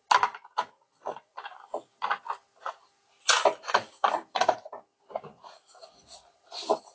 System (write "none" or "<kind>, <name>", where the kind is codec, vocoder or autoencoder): none